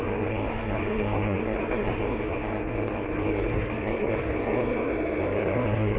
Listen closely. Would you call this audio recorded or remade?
remade